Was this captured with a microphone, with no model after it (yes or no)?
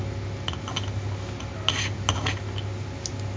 yes